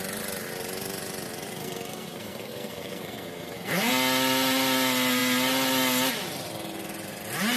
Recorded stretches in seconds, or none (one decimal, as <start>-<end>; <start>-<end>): 0.0-1.6; 3.9-7.6